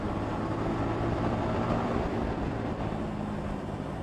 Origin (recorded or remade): recorded